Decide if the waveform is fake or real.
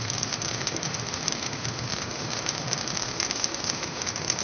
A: fake